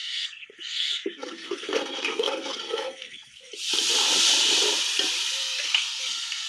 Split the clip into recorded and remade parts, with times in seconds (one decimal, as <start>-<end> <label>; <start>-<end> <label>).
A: 0.0-3.5 remade; 3.5-5.4 recorded; 5.4-6.5 remade